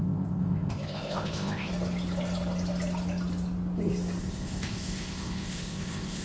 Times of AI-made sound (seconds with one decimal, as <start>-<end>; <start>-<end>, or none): 0.0-1.7; 4.2-6.2